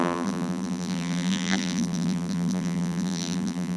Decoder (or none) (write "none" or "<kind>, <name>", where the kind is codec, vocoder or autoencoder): vocoder, BigVGAN v2